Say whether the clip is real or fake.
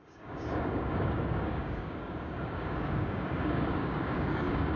fake